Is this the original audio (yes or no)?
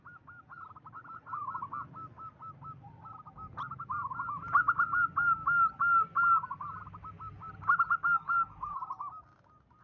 yes